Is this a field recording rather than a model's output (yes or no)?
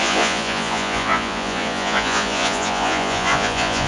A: no